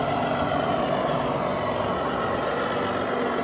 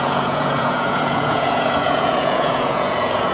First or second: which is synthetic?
second